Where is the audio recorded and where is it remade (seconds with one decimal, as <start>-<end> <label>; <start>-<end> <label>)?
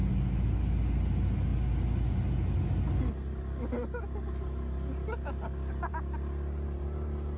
0.0-7.4 recorded